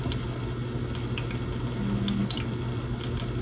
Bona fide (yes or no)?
yes